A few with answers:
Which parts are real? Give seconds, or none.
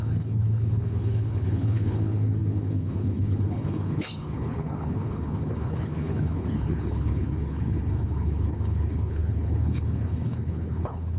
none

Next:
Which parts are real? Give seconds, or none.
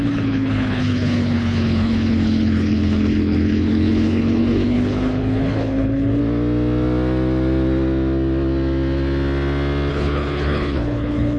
6.2-9.9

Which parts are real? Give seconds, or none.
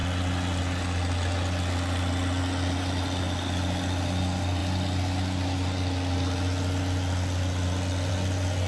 0.0-8.7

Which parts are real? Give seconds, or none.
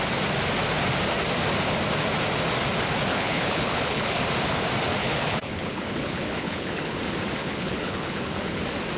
0.0-3.1; 4.2-5.0; 7.0-7.4; 8.6-9.0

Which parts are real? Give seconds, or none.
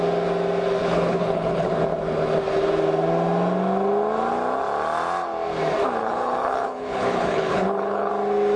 0.0-0.8; 1.7-6.0; 8.1-8.6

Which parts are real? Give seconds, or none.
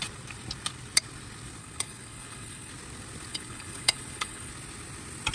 0.0-1.6; 2.7-3.3; 4.5-5.3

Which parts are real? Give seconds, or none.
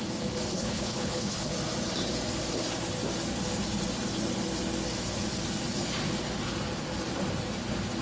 0.0-0.5; 1.5-8.0